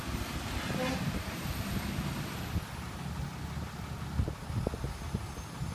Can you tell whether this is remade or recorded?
recorded